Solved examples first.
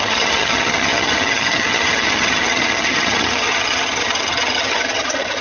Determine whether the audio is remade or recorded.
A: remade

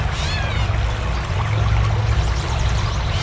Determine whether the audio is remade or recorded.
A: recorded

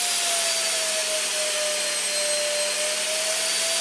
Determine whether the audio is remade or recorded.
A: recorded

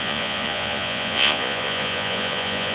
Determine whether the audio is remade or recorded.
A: remade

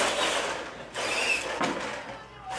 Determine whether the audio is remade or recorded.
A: recorded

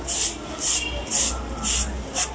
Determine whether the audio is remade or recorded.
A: recorded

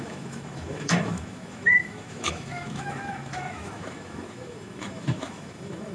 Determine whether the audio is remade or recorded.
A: remade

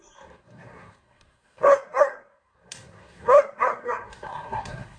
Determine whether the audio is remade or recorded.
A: remade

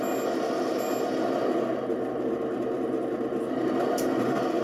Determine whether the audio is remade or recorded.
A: recorded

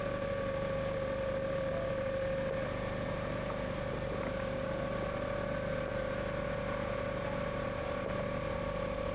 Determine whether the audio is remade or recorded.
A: recorded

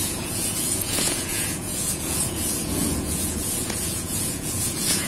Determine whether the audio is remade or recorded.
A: remade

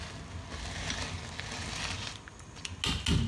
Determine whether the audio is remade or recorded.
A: recorded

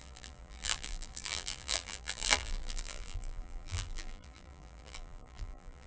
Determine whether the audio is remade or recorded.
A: remade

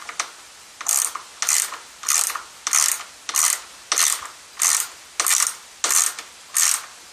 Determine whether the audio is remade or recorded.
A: recorded